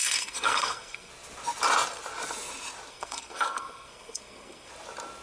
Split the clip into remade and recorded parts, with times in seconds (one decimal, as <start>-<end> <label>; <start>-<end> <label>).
0.0-1.1 remade; 1.1-2.9 recorded; 2.9-4.7 remade; 4.7-5.2 recorded